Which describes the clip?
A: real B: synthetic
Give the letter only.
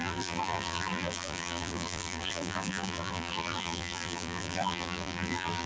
B